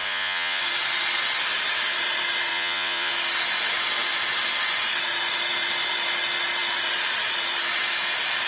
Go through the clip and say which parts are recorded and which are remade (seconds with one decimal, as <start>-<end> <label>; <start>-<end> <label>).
0.0-0.6 remade; 0.6-2.5 recorded; 2.5-3.1 remade; 3.1-8.5 recorded